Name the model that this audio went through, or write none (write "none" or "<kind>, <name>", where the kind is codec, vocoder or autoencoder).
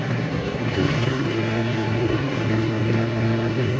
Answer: codec, SNAC